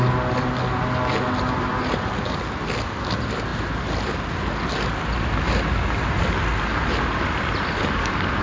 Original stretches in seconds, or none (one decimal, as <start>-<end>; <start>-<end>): 0.0-8.4

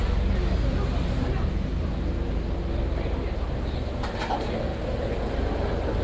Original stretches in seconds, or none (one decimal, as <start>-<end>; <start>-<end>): 0.0-6.0

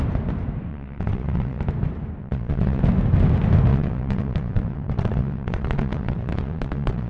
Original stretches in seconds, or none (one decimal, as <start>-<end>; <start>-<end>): 0.0-0.7; 1.6-2.2; 2.8-3.7

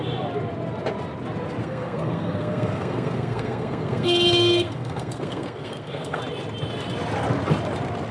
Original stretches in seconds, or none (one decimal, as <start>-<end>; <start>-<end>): 0.0-1.6; 6.2-8.1

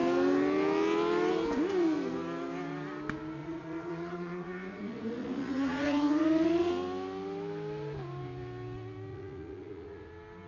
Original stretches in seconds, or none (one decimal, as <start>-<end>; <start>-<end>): 0.0-3.4; 6.7-9.1; 10.1-10.5

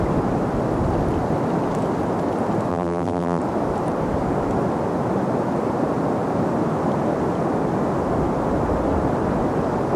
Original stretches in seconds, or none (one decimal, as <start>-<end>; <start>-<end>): 0.0-2.7; 3.4-10.0